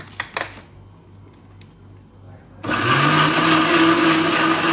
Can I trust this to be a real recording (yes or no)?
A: yes